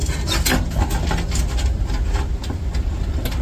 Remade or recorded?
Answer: recorded